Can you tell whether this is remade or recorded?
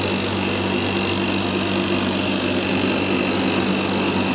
recorded